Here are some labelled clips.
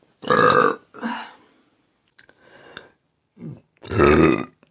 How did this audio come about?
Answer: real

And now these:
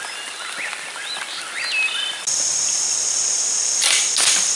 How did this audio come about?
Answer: real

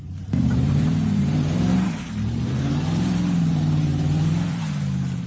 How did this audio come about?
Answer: fake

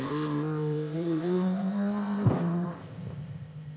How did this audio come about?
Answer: fake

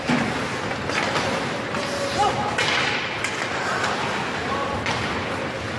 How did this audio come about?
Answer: real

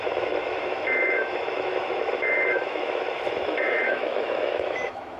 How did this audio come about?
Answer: fake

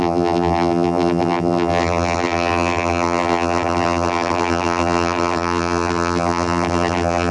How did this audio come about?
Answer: fake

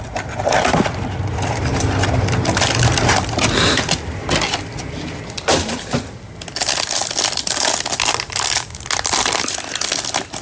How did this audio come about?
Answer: real